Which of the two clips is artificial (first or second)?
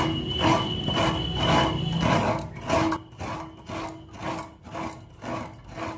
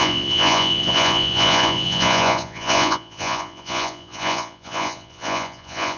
second